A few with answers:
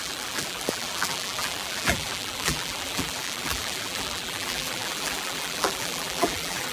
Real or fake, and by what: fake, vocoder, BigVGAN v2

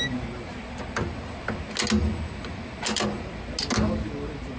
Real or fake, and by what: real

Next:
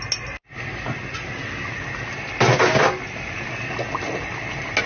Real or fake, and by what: real